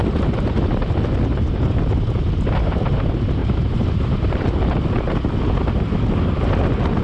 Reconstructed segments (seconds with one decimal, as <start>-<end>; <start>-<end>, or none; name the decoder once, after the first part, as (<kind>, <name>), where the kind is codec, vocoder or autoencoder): 3.4-5.2 (vocoder, BigVGAN v2)